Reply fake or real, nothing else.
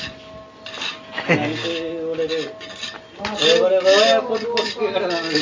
real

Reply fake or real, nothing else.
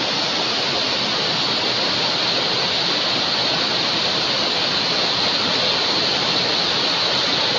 real